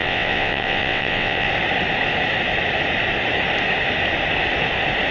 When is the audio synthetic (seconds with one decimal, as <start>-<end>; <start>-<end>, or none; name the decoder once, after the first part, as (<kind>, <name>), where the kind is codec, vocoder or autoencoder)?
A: 0.0-1.5 (vocoder, WaveNeXt)